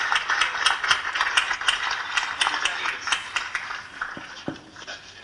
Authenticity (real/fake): real